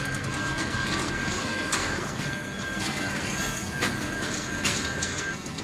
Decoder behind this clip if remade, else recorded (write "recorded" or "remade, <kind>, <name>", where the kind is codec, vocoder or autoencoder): remade, codec, SNAC